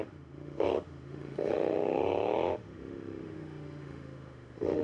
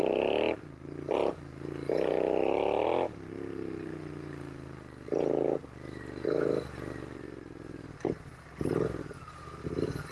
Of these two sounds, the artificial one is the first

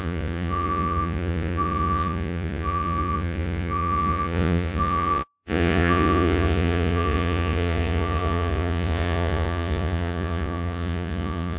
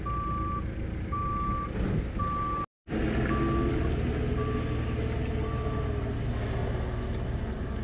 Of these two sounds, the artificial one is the first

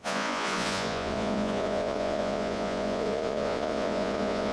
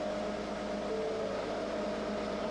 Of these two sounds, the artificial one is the first